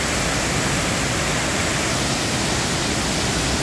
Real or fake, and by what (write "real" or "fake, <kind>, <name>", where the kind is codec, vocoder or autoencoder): real